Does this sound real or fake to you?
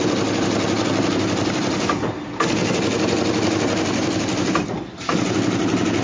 real